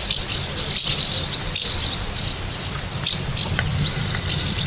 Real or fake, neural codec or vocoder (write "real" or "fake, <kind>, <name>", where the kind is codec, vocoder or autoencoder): real